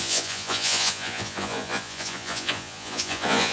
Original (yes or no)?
no